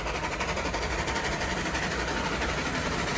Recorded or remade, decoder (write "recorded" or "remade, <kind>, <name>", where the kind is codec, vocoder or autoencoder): recorded